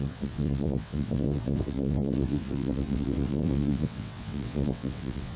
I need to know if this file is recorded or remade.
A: remade